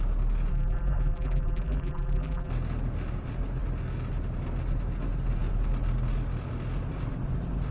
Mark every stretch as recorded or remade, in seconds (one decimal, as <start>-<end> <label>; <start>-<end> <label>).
0.0-0.5 recorded; 0.5-2.5 remade; 2.5-7.7 recorded